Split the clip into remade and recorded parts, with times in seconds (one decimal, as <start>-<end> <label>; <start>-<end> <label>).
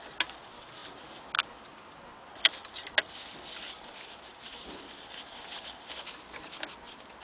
0.0-7.2 recorded